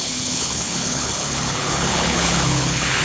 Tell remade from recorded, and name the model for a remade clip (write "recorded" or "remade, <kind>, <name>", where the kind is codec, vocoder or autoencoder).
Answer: remade, codec, HILCodec